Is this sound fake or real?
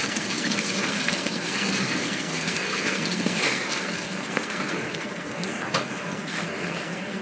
fake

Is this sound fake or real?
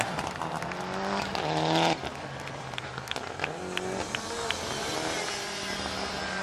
real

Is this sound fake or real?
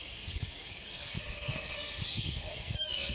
fake